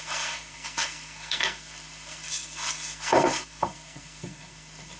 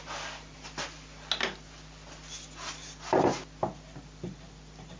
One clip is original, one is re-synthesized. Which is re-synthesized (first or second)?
first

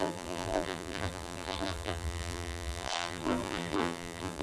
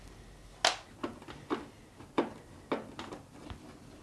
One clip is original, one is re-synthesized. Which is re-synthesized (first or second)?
first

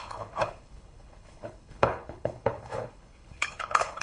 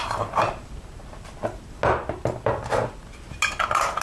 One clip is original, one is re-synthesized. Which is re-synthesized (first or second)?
first